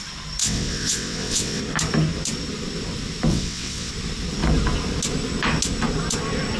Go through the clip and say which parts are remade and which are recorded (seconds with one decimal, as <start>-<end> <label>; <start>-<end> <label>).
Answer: 0.0-0.4 recorded; 0.4-1.6 remade; 1.6-3.3 recorded; 3.3-3.9 remade; 3.9-6.6 recorded